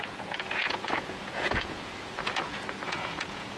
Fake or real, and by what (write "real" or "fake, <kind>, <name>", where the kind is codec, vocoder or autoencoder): fake, vocoder, Vocos